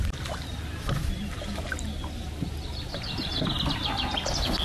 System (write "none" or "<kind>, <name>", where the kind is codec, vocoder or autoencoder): none